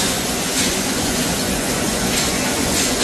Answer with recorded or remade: remade